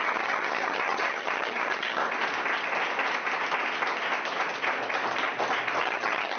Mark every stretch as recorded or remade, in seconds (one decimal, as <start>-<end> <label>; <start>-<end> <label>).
0.0-2.0 remade; 2.0-5.8 recorded; 5.8-6.4 remade